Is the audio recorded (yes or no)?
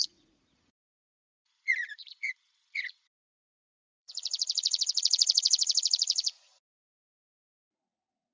no